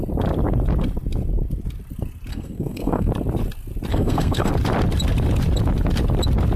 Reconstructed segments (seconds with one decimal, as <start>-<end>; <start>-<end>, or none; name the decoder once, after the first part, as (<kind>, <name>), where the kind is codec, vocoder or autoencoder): 2.3-3.1 (codec, SNAC); 3.9-4.5